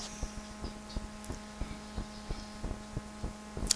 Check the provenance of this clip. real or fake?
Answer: real